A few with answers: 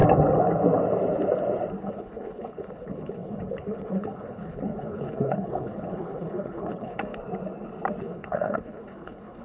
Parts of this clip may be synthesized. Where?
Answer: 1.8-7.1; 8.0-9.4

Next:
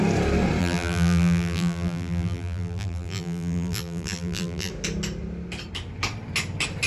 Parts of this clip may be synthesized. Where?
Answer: 0.6-4.7

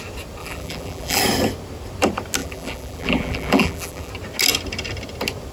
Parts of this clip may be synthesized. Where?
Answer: 0.4-1.2; 2.4-4.1